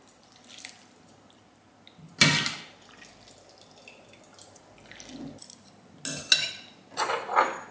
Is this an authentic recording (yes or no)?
yes